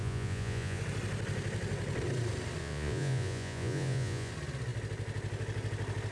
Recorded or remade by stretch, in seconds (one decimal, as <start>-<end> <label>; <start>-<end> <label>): 0.0-0.8 remade; 0.8-2.6 recorded; 2.6-4.3 remade; 4.3-6.1 recorded